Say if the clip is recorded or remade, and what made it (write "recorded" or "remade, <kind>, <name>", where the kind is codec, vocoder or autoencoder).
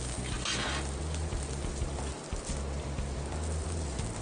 recorded